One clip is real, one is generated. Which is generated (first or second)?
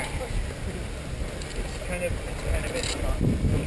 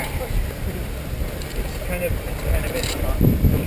second